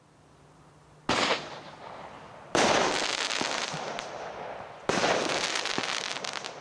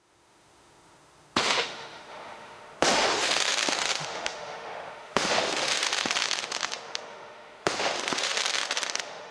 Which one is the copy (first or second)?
second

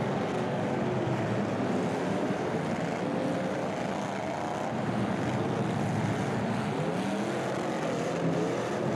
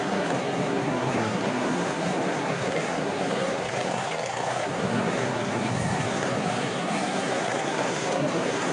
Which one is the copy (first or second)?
second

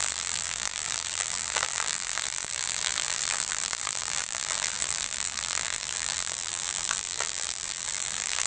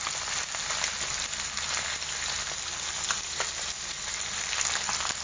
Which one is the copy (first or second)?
first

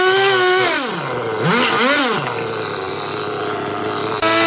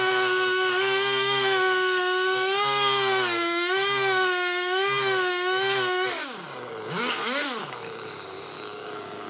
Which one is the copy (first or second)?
second